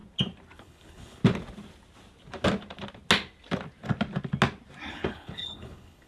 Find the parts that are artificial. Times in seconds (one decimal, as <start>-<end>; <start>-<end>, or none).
0.6-1.2; 4.9-6.1